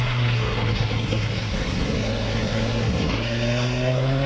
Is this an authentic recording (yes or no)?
no